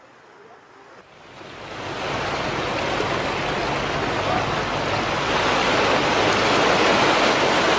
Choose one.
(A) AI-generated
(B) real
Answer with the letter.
B